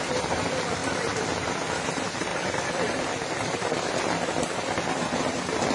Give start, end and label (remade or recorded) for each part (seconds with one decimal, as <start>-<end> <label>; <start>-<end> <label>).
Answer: 0.0-0.8 recorded; 0.8-1.7 remade; 1.7-2.3 recorded; 2.3-3.7 remade; 3.7-5.7 recorded